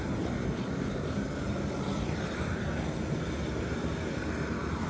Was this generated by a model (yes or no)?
no